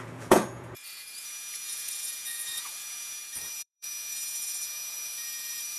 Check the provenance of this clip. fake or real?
fake